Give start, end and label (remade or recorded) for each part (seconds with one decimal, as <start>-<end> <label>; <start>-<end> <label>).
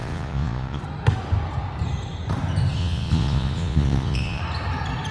0.0-0.8 remade; 0.8-2.8 recorded; 2.8-4.4 remade; 4.4-5.1 recorded